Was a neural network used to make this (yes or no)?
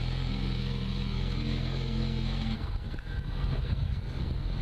yes